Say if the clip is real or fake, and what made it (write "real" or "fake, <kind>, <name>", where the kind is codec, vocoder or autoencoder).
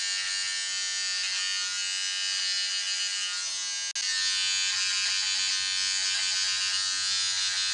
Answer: real